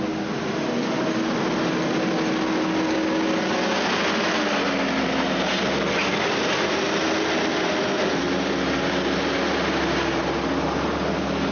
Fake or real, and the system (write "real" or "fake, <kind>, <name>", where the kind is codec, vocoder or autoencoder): real